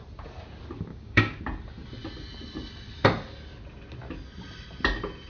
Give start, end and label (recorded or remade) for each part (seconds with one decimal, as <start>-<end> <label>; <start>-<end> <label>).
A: 0.0-0.9 recorded; 0.9-1.4 remade; 1.4-5.3 recorded